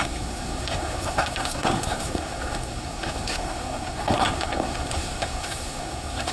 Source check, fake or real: fake